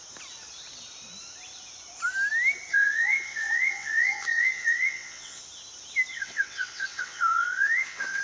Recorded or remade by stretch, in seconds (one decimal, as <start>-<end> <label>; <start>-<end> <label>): 0.0-2.7 recorded; 2.7-5.4 remade; 5.4-6.1 recorded; 6.1-8.2 remade